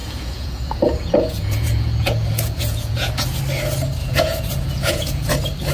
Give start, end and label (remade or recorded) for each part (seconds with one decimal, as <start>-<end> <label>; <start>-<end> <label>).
0.0-3.4 remade; 3.4-4.0 recorded; 4.0-5.3 remade; 5.3-5.7 recorded